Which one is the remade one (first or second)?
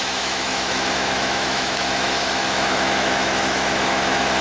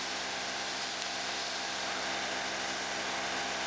first